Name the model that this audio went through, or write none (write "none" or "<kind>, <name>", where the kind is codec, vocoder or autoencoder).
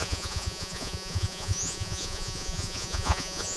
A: vocoder, Vocos